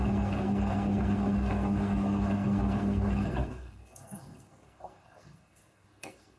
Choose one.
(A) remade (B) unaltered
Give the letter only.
A